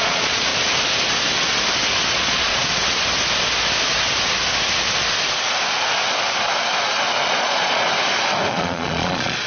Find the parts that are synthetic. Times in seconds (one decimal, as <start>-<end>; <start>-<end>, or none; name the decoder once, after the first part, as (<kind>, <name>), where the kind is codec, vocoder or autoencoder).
0.0-0.5 (vocoder, Vocos); 2.1-2.8; 7.3-7.9; 8.5-9.5